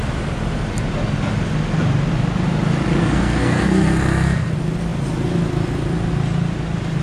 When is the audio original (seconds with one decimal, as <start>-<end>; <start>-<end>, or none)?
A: 0.0-3.0; 4.5-7.0